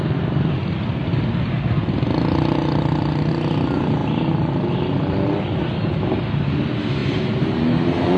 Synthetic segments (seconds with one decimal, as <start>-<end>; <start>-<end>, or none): 7.0-8.2